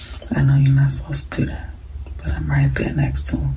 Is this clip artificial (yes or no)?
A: yes